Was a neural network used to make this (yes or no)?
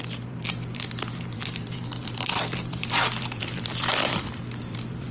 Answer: yes